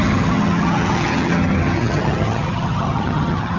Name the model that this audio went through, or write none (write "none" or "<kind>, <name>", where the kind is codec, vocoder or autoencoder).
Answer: vocoder, HiFi-GAN